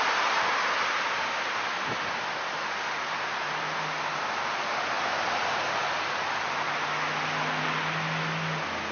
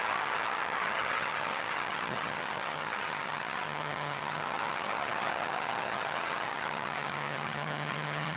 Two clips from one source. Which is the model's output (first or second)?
second